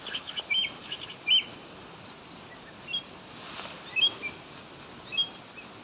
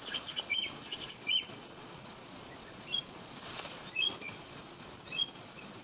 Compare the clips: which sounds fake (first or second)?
second